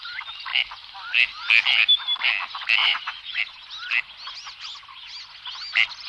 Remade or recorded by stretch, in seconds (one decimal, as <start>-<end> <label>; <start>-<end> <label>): 0.0-2.8 recorded; 2.8-3.4 remade; 3.4-6.1 recorded